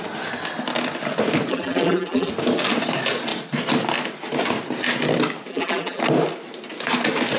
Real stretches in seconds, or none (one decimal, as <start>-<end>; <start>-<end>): 0.0-1.5; 2.3-5.5; 6.0-7.4